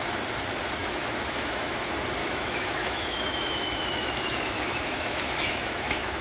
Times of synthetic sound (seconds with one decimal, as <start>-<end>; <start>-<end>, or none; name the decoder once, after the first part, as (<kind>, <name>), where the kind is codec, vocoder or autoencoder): 0.8-1.7 (autoencoder, DAC-VAE); 2.2-6.2